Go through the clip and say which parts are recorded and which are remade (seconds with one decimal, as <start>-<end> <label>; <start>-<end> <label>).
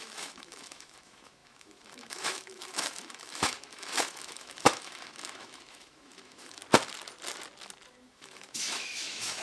0.0-6.6 remade; 6.6-7.9 recorded; 7.9-9.4 remade